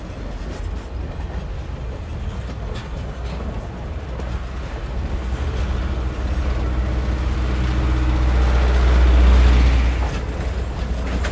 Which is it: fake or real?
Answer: real